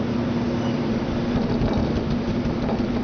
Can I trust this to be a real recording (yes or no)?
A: yes